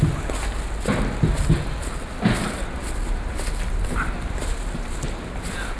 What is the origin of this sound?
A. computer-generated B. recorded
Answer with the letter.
B